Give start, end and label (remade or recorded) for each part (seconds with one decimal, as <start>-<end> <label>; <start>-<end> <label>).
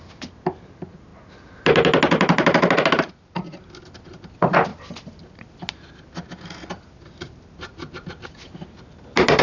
0.0-9.4 recorded